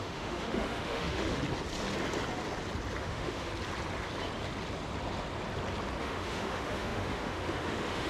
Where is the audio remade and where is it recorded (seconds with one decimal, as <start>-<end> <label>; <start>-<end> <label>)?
0.0-1.4 remade; 1.4-3.0 recorded; 3.0-3.5 remade; 3.5-6.0 recorded; 6.0-8.1 remade